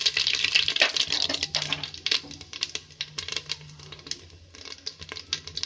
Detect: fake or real real